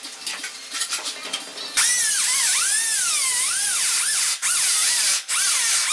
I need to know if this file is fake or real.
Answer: real